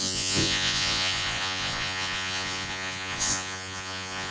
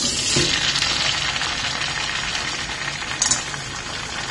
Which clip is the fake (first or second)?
first